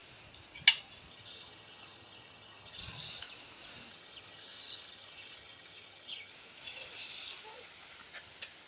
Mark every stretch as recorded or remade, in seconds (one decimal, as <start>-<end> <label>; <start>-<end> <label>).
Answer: 0.0-1.1 recorded; 1.1-2.8 remade; 2.8-3.9 recorded; 3.9-6.3 remade; 6.3-8.7 recorded